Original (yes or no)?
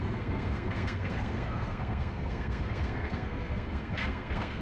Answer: no